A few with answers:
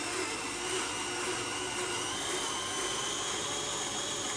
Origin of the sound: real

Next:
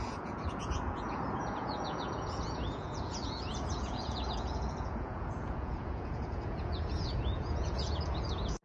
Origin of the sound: fake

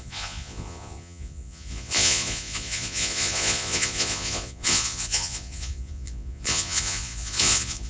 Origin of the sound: fake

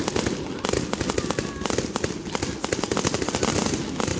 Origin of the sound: real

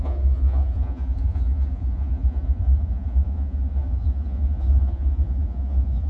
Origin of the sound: fake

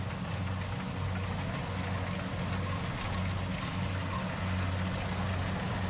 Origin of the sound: real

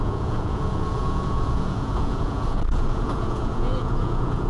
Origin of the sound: fake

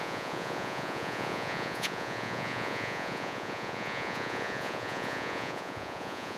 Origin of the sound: fake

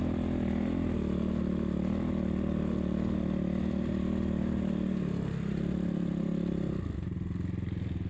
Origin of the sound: real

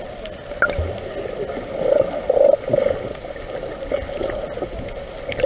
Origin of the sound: real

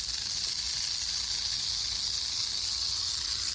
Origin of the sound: real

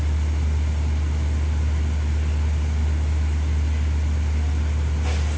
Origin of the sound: real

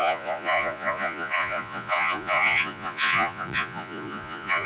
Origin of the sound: fake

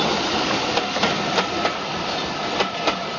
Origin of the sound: real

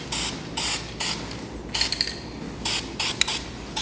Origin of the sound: real